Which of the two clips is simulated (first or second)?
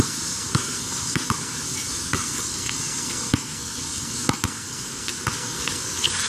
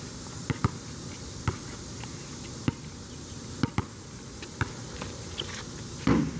first